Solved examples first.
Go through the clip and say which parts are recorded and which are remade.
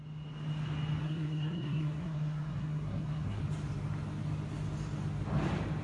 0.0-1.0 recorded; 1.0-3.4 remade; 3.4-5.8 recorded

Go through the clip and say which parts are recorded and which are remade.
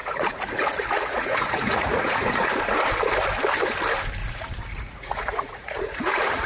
0.0-2.6 remade; 2.6-4.2 recorded; 4.2-6.5 remade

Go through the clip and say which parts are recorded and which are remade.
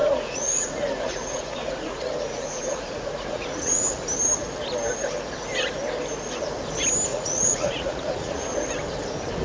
0.0-3.9 remade; 3.9-7.1 recorded; 7.1-8.4 remade; 8.4-9.4 recorded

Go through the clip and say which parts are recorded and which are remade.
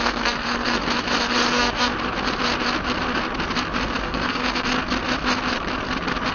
0.0-0.8 remade; 0.8-1.5 recorded; 1.5-1.9 remade; 1.9-4.0 recorded; 4.0-4.7 remade; 4.7-6.3 recorded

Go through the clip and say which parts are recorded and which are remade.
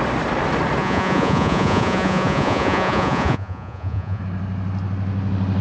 0.0-0.8 recorded; 0.8-4.2 remade; 4.2-5.6 recorded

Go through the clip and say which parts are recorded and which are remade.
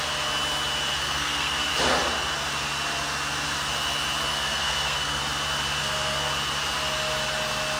0.0-1.0 recorded; 1.0-1.7 remade; 1.7-4.3 recorded; 4.3-5.2 remade; 5.2-5.8 recorded; 5.8-6.3 remade; 6.3-7.8 recorded